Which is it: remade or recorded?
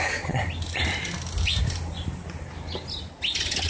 recorded